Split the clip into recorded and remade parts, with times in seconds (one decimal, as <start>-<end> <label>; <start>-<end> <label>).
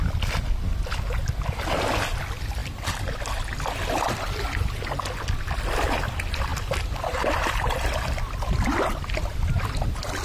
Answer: 0.0-10.2 recorded